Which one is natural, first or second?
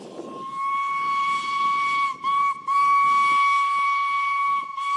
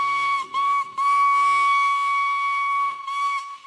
first